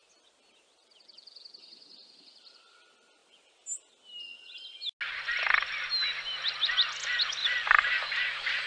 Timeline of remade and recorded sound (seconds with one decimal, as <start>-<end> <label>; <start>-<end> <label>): 0.0-7.4 recorded; 7.4-8.0 remade; 8.0-8.7 recorded